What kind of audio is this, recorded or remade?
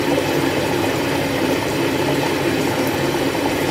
remade